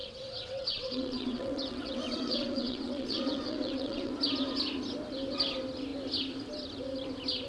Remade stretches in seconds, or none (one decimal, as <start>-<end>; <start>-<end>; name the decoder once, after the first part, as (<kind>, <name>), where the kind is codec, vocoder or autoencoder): 0.0-4.1 (vocoder, WaveNeXt)